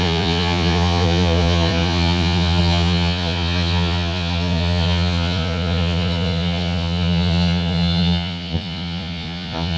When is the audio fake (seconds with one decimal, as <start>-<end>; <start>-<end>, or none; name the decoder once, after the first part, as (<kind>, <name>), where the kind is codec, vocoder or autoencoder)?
0.0-9.8 (vocoder, Vocos)